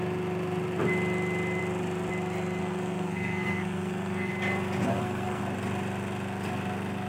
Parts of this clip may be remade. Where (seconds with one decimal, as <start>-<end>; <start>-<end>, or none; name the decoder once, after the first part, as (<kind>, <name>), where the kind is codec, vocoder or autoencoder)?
2.6-4.3 (codec, SNAC); 4.9-5.4